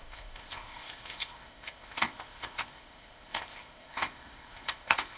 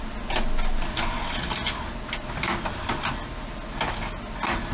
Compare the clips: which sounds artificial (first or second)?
first